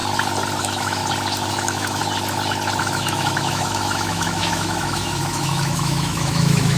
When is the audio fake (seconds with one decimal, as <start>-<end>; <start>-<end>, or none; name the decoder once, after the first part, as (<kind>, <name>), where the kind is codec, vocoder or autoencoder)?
0.6-1.0 (autoencoder, DAC-VAE); 1.5-2.0; 2.8-6.8